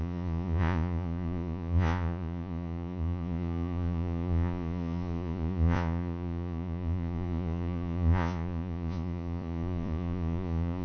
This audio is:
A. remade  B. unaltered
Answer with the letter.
A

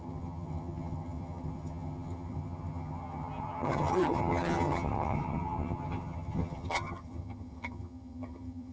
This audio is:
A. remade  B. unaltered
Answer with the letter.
A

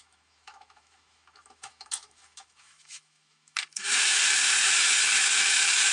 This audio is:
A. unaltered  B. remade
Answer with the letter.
B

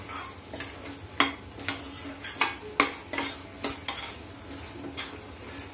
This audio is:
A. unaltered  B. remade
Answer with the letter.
A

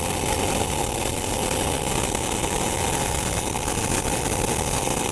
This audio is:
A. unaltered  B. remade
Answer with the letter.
A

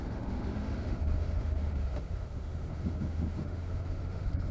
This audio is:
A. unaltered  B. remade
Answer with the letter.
B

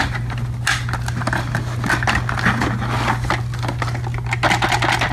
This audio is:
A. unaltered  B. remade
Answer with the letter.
A